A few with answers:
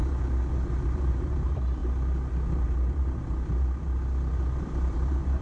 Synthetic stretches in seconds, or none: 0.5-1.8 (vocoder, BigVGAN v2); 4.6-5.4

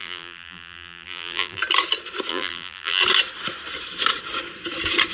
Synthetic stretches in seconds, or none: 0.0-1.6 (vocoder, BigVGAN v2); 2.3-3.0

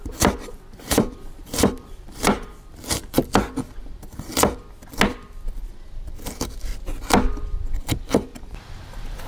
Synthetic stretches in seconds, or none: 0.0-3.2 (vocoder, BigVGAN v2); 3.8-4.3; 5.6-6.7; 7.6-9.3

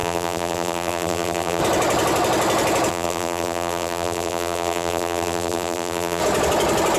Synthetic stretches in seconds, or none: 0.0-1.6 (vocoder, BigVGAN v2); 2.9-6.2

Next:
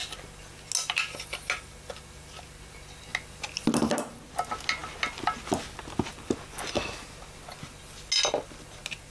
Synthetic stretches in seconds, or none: none

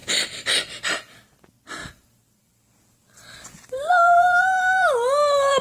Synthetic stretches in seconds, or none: 1.8-5.6 (vocoder, BigVGAN v2)